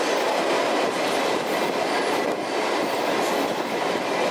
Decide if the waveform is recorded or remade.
recorded